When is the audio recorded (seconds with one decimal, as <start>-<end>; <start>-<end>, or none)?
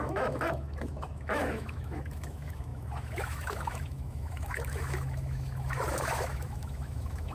none